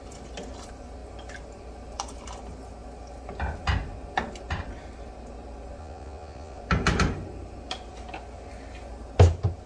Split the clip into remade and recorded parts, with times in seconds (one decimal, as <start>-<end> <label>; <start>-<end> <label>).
0.0-5.8 recorded; 5.8-6.6 remade; 6.6-9.7 recorded

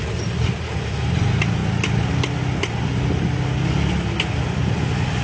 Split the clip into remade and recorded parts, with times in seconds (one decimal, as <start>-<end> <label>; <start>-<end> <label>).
0.0-5.2 recorded

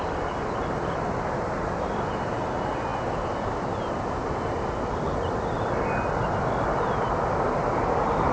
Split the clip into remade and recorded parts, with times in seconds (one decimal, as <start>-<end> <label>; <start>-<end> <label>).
0.0-8.3 recorded

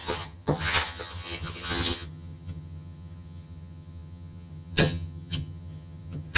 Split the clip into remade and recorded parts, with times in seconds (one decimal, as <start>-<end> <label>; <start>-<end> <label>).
0.0-6.4 remade